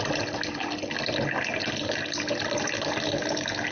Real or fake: real